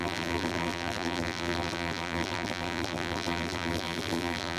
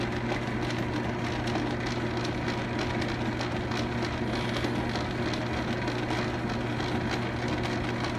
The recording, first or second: second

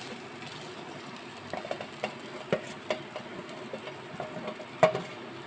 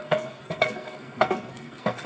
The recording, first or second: first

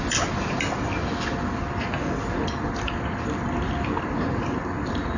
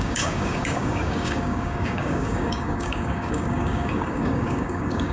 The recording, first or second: first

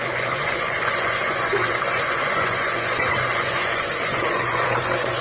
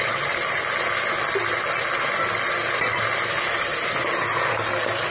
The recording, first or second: second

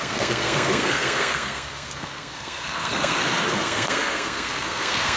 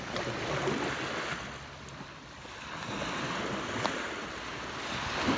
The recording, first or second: second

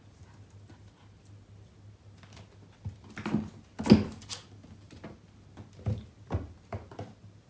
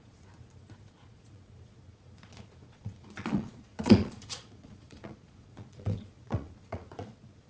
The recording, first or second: first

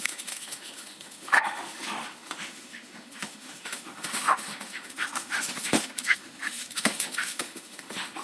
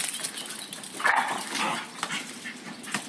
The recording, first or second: second